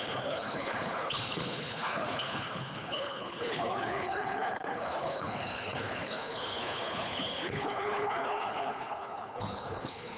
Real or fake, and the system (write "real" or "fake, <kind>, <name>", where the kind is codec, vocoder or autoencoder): fake, codec, HILCodec